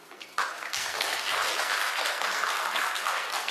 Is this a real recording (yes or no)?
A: no